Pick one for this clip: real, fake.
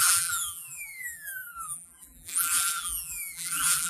fake